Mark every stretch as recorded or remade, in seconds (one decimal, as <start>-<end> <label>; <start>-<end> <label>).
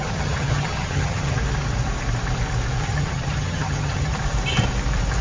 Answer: 0.0-1.4 remade; 1.4-2.8 recorded; 2.8-4.1 remade; 4.1-5.2 recorded